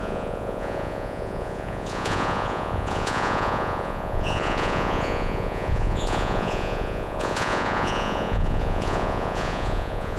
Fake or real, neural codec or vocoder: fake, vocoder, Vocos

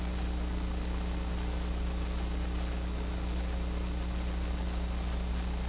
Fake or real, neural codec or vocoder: real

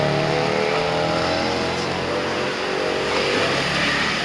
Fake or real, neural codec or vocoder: real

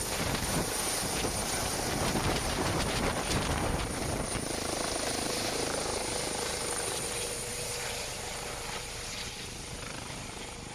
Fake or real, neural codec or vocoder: fake, vocoder, BigVGAN v2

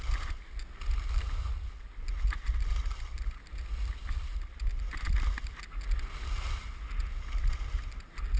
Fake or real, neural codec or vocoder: real